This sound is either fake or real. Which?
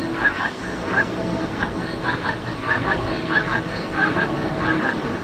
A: fake